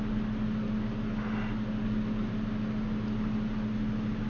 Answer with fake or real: real